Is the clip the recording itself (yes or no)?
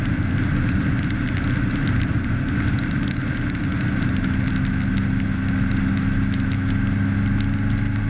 yes